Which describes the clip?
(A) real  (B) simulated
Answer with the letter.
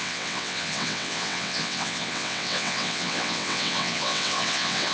B